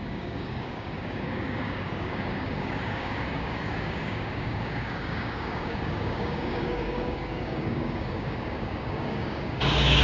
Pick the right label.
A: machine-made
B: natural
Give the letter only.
A